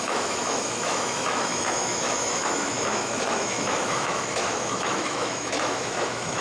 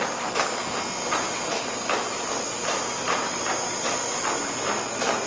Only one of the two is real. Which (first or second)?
second